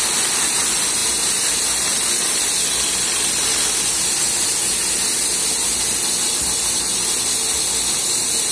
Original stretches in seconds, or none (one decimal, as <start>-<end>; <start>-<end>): 0.0-8.5